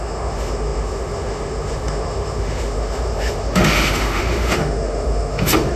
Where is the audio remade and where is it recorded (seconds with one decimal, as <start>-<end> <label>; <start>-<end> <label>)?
0.0-5.8 remade